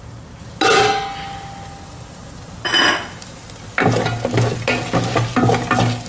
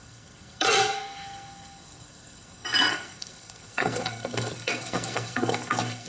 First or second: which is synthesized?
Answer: second